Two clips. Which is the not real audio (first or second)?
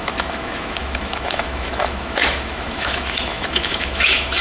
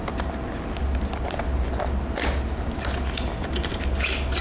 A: first